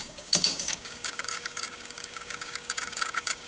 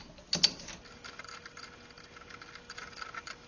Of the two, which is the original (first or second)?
second